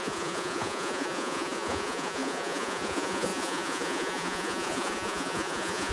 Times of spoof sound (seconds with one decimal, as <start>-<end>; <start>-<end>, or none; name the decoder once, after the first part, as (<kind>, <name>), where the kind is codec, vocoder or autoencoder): 0.0-5.9 (vocoder, Vocos)